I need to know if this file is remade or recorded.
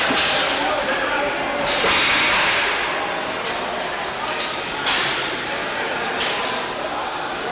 recorded